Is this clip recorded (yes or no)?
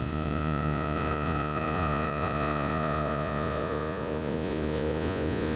no